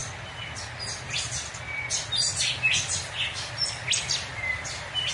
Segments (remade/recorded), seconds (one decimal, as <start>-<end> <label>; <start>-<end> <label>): 0.0-5.1 recorded